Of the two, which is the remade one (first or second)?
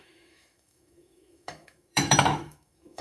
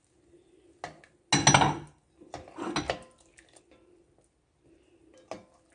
first